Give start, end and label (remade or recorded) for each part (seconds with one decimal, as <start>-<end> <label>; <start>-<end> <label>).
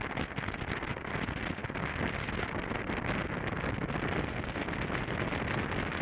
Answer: 0.0-6.0 recorded